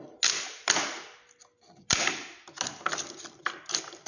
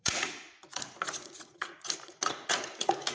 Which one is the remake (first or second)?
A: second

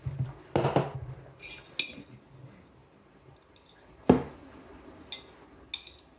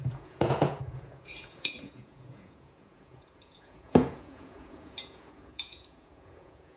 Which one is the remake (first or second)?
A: second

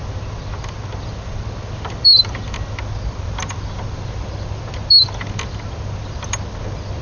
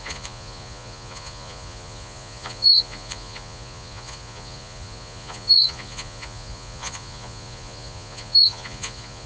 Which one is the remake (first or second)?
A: second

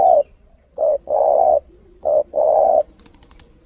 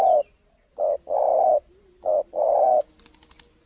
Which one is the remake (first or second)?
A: first